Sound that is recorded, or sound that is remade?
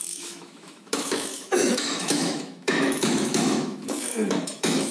remade